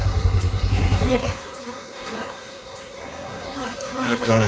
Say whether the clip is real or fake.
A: fake